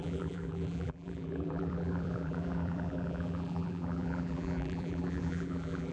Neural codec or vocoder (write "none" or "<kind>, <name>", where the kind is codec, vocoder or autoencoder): vocoder, BigVGAN v2